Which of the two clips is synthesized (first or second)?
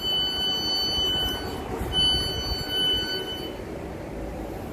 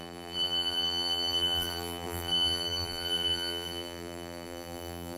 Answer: second